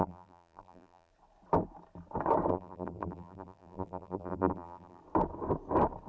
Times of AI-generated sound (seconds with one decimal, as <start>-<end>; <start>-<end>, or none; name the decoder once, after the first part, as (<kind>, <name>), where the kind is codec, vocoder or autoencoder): 0.0-1.1 (vocoder, BigVGAN v2); 2.5-5.0